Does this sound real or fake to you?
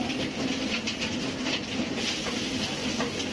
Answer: real